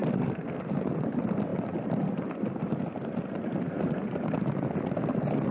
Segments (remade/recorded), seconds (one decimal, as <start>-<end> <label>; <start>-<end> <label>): 0.0-0.6 remade; 0.6-5.5 recorded